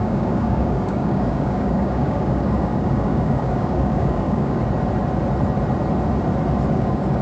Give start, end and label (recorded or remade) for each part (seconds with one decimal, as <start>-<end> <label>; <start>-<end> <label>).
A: 0.0-4.6 remade; 4.6-6.7 recorded; 6.7-7.2 remade